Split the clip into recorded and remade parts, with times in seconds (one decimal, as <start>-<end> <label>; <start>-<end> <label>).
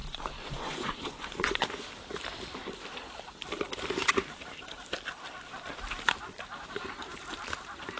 0.0-1.7 remade; 1.7-8.0 recorded